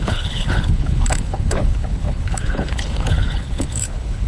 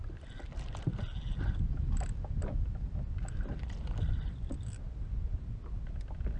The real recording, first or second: second